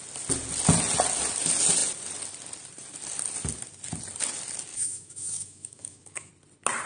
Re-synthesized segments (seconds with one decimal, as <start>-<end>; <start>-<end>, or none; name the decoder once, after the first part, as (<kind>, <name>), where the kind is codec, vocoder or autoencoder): 4.7-6.3 (autoencoder, DAC-VAE)